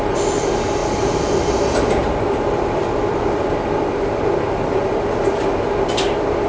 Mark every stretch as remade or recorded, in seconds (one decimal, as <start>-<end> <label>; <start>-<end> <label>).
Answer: 0.0-6.5 recorded